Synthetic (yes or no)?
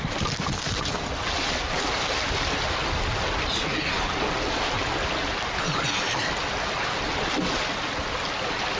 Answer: no